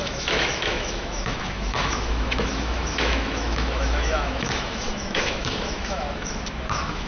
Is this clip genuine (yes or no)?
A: no